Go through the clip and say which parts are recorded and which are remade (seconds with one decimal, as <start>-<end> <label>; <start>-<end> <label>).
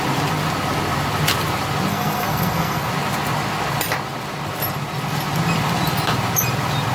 0.0-1.9 recorded; 1.9-2.9 remade; 2.9-6.9 recorded